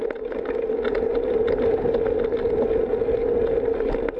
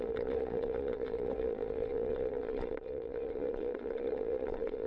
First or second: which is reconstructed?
second